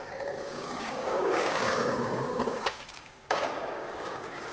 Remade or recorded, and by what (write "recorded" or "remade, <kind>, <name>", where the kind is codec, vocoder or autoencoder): remade, codec, DAC